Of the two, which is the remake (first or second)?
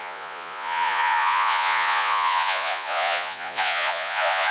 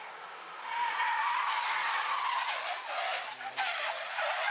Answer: first